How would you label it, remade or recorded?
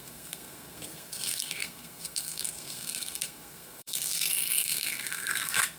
remade